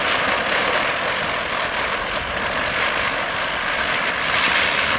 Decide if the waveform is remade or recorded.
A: recorded